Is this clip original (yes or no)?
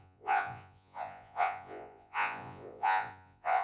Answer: no